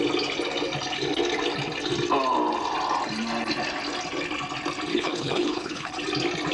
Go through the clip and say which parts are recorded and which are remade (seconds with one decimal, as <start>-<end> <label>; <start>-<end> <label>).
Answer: 0.0-4.9 recorded; 4.9-5.9 remade; 5.9-6.5 recorded